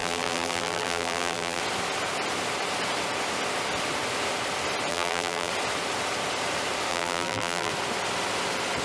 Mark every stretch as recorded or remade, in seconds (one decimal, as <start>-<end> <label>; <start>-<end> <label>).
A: 0.0-1.6 remade; 1.6-4.9 recorded; 4.9-5.5 remade; 5.5-6.9 recorded; 6.9-7.7 remade; 7.7-8.8 recorded